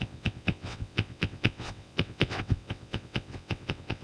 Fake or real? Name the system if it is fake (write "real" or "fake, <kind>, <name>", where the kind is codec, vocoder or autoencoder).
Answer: fake, vocoder, WaveNeXt